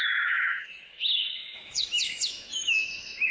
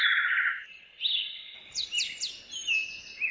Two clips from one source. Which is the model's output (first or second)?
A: first